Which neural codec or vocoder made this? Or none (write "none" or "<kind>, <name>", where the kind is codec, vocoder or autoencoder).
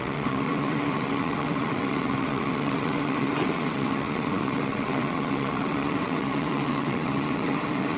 vocoder, WaveNeXt